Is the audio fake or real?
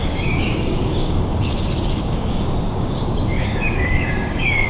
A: fake